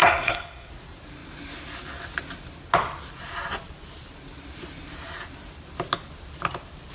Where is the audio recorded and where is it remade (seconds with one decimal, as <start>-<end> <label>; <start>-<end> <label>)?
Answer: 0.0-0.7 remade; 0.7-6.9 recorded